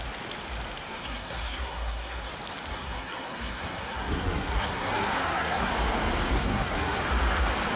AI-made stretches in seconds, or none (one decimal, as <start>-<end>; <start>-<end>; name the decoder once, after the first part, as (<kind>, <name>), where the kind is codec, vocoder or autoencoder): 0.9-2.3 (codec, SNAC); 2.7-5.7; 6.4-7.0